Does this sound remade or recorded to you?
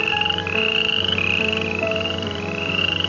remade